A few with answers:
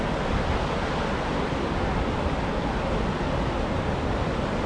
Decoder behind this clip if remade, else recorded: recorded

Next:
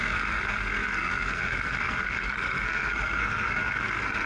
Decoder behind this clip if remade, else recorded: remade, codec, SNAC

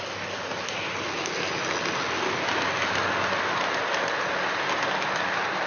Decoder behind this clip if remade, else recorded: recorded